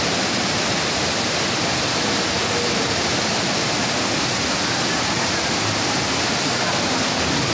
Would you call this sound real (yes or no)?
yes